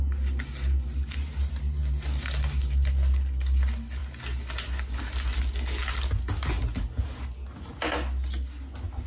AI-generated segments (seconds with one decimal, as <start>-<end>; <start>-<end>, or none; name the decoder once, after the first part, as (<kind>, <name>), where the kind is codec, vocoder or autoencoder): none